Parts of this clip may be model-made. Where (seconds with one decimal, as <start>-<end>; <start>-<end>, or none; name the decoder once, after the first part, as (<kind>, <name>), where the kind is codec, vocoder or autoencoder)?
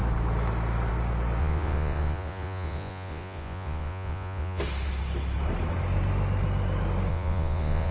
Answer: 1.4-4.6 (vocoder, Vocos); 7.1-7.9